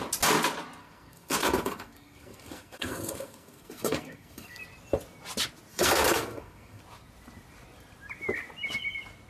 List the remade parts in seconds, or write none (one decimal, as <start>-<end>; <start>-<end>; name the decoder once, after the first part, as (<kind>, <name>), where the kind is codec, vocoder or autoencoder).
0.8-4.6 (codec, SNAC); 5.7-6.8